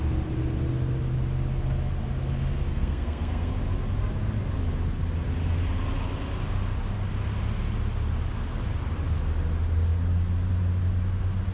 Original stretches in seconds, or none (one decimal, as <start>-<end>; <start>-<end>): 0.0-2.7; 3.5-11.5